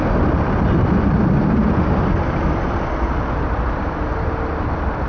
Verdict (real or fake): real